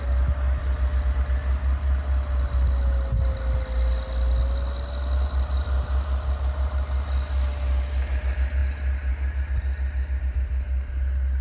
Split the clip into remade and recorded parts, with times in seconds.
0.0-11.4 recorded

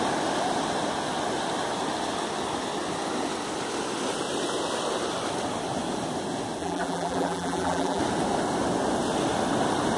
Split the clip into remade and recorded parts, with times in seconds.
0.0-6.6 recorded; 6.6-8.0 remade; 8.0-10.0 recorded

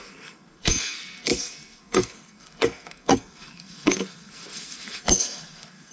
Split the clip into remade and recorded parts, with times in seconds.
0.0-5.9 remade

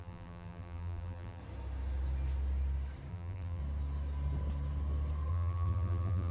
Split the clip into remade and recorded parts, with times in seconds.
0.0-1.4 remade; 1.4-3.1 recorded; 3.1-3.6 remade; 3.6-5.3 recorded; 5.3-6.3 remade

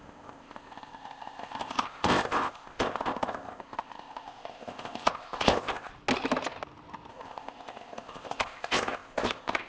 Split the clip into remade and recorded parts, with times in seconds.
0.0-5.9 remade; 5.9-7.1 recorded; 7.1-9.7 remade

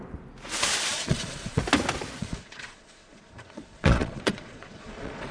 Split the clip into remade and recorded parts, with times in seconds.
0.0-0.9 recorded; 0.9-1.6 remade; 1.6-2.2 recorded; 2.2-5.3 remade

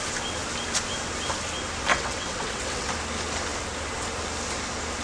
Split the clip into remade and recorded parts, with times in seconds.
0.0-1.9 recorded; 1.9-2.9 remade; 2.9-5.0 recorded